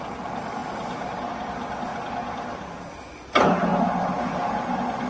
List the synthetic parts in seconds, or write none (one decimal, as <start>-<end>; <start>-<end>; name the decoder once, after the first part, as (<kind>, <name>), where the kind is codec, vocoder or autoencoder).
1.9-3.0 (vocoder, BigVGAN v2)